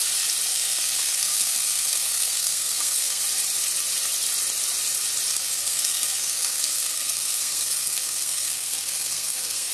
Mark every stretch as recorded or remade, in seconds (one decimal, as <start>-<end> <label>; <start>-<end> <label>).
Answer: 0.0-0.5 recorded; 0.5-3.2 remade; 3.2-5.3 recorded; 5.3-9.7 remade